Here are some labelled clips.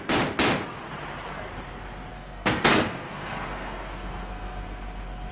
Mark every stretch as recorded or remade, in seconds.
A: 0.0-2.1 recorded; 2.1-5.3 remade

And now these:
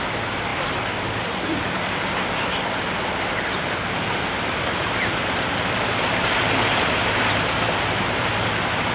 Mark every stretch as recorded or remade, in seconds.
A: 0.0-0.5 recorded; 0.5-2.1 remade; 2.1-4.8 recorded; 4.8-8.3 remade; 8.3-8.9 recorded

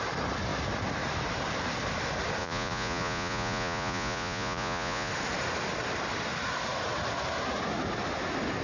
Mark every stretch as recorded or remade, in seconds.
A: 0.0-2.4 recorded; 2.4-5.1 remade; 5.1-8.6 recorded

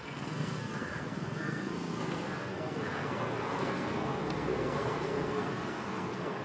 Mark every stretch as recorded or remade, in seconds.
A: 0.0-6.4 remade

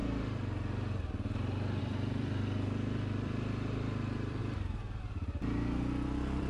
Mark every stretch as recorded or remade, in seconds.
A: 0.0-1.8 recorded; 1.8-4.4 remade; 4.4-5.0 recorded; 5.0-6.5 remade